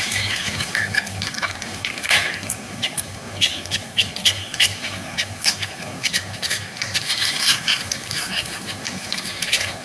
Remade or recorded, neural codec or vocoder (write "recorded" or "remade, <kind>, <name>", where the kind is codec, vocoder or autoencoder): remade, codec, SNAC